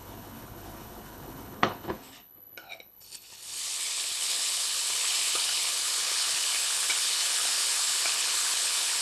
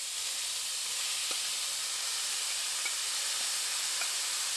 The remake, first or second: first